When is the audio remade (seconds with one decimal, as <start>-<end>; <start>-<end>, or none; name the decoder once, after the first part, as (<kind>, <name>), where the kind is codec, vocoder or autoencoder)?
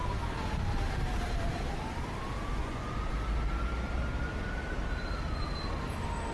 2.6-3.1 (vocoder, Vocos)